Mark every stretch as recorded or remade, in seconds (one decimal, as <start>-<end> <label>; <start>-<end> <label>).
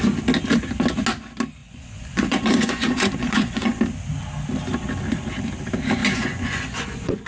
0.0-1.6 recorded; 1.6-3.8 remade; 3.8-6.0 recorded; 6.0-7.3 remade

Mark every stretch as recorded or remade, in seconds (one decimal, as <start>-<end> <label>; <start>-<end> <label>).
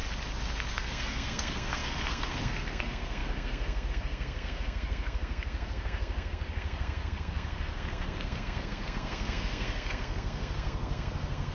0.0-0.7 recorded; 0.7-11.5 remade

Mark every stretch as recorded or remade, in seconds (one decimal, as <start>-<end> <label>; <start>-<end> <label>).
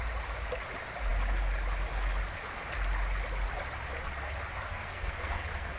0.0-4.7 recorded; 4.7-5.8 remade